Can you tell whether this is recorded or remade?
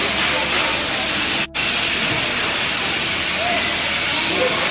recorded